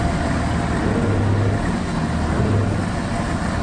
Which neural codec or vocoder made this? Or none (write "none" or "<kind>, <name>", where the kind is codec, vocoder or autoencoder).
none